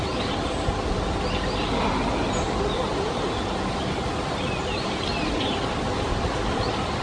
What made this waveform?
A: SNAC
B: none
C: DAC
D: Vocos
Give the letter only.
B